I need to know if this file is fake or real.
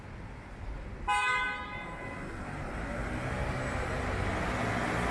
real